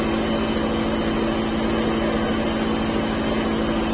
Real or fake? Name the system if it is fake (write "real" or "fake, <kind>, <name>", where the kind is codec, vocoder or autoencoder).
real